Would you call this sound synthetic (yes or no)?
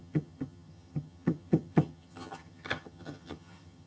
yes